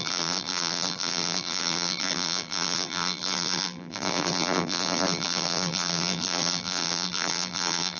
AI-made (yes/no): yes